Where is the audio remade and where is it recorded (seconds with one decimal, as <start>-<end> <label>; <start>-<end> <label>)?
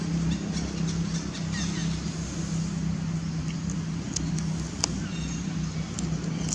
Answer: 0.0-6.5 recorded